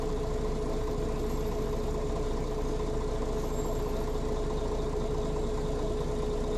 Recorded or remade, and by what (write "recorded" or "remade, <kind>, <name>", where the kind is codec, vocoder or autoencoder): recorded